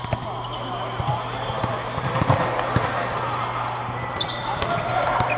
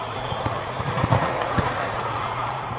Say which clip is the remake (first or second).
second